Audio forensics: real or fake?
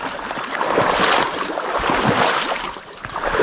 real